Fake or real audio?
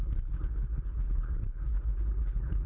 fake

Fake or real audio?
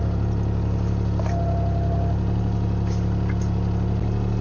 real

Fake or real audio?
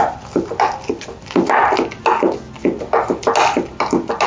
real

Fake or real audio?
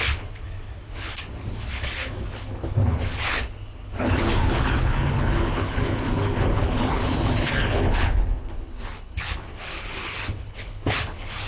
fake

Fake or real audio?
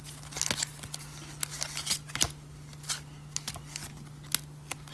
real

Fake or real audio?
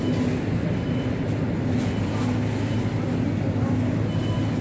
real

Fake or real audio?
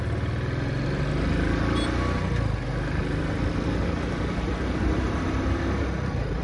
real